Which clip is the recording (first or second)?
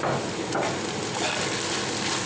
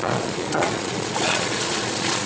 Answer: first